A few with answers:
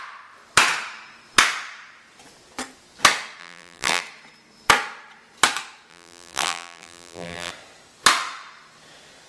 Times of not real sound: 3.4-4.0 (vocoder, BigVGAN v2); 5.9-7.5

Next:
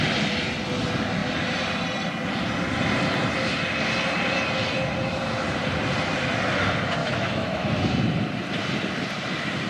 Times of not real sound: 7.0-7.7 (autoencoder, DAC-VAE)

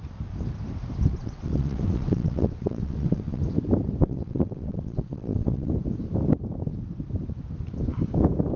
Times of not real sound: 1.1-3.4 (vocoder, WaveNeXt); 4.0-5.7